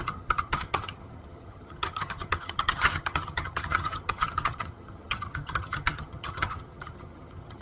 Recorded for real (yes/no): no